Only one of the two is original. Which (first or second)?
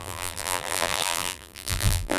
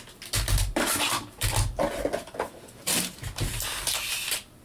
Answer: second